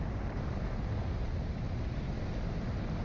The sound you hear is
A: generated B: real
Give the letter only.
B